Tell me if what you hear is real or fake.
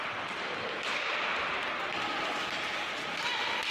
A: real